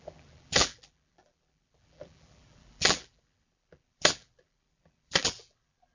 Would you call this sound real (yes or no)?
no